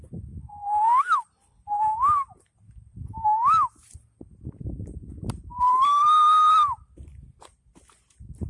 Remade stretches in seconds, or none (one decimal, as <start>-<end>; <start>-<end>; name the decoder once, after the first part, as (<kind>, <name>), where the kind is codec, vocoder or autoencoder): 5.5-6.0 (vocoder, BigVGAN v2)